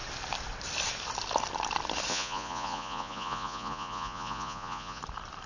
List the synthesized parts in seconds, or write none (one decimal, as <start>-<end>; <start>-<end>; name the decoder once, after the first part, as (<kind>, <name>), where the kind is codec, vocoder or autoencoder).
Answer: 2.1-5.0 (vocoder, Vocos)